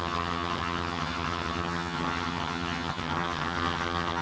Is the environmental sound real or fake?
fake